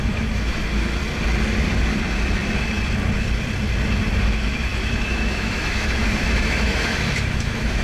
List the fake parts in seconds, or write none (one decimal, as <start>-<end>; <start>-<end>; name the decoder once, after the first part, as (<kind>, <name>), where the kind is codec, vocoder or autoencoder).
0.0-1.0 (autoencoder, DAC-VAE); 4.2-7.8